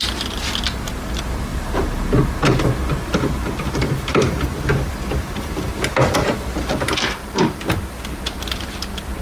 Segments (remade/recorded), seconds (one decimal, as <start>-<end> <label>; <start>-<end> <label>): 0.0-4.1 recorded; 4.1-5.7 remade; 5.7-7.2 recorded; 7.2-7.8 remade; 7.8-9.2 recorded